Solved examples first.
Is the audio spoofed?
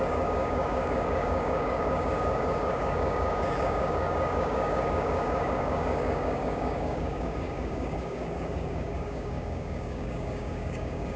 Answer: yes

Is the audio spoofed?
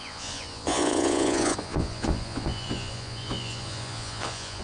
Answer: yes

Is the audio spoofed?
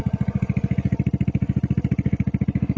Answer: no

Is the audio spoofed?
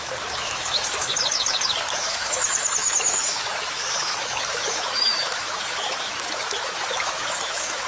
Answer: yes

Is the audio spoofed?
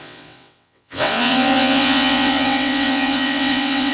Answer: yes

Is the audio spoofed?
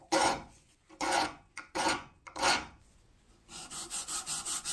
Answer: yes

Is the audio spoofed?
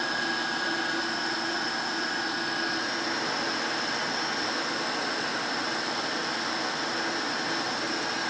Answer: no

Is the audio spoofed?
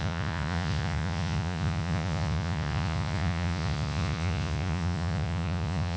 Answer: yes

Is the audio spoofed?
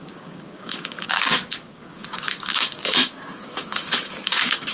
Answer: yes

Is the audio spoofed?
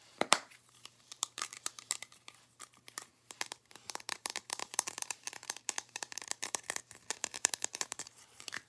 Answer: yes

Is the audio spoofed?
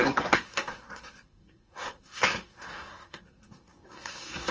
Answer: yes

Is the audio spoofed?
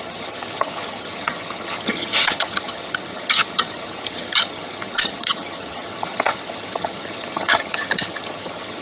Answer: yes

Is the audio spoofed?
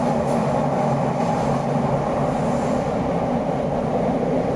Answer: no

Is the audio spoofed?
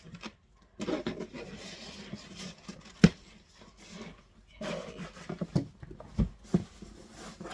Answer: no